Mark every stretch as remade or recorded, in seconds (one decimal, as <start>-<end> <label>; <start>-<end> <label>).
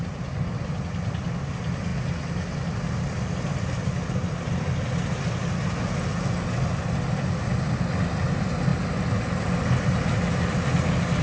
0.0-11.2 recorded